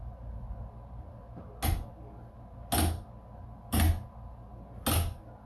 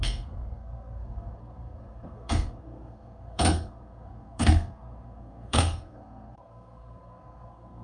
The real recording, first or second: first